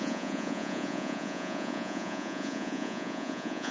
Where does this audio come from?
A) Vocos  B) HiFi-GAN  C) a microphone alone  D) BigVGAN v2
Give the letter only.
A